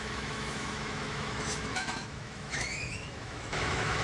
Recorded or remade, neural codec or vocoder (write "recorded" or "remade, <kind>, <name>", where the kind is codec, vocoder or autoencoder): remade, autoencoder, DAC-VAE